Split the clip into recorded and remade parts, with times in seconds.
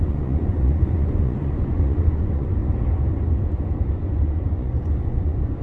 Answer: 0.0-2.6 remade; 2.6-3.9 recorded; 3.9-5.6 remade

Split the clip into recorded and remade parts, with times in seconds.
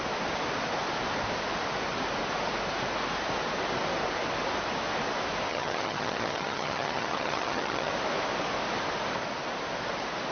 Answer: 0.0-5.5 recorded; 5.5-7.9 remade; 7.9-10.3 recorded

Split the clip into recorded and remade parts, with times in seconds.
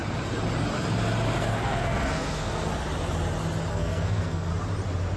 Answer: 0.0-1.4 recorded; 1.4-2.7 remade; 2.7-3.7 recorded; 3.7-4.5 remade; 4.5-5.2 recorded